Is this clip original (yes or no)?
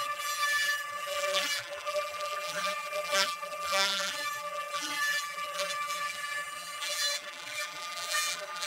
no